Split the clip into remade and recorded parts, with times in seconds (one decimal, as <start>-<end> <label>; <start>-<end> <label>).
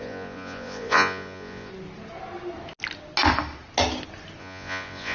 0.0-1.7 remade; 1.7-4.4 recorded; 4.4-5.1 remade